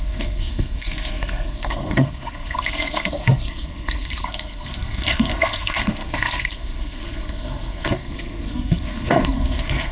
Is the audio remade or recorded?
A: remade